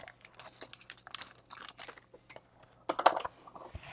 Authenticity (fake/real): real